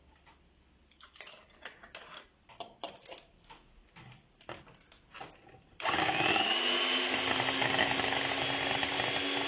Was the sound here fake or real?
real